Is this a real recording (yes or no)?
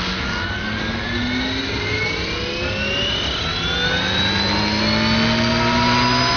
yes